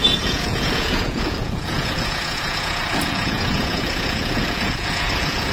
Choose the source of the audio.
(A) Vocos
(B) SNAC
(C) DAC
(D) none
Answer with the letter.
A